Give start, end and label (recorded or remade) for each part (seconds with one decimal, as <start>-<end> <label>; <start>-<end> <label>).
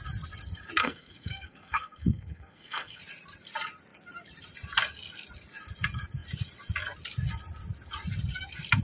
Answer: 0.0-0.8 recorded; 0.8-3.0 remade; 3.0-8.8 recorded